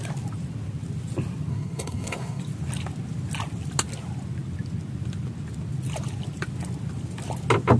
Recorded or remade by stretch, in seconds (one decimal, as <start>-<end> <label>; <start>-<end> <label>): 0.0-1.5 recorded; 1.5-2.4 remade; 2.4-7.8 recorded